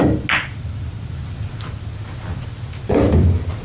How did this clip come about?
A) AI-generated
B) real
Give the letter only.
B